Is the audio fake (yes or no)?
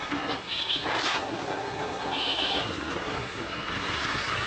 yes